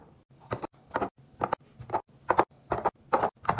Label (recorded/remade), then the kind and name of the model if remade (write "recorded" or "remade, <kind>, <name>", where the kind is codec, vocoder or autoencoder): recorded